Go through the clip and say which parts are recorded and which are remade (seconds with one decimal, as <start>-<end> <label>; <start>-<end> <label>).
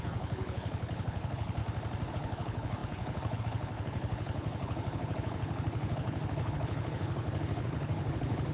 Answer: 0.0-1.6 remade; 1.6-2.1 recorded; 2.1-8.5 remade